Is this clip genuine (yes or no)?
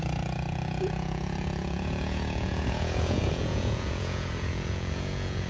no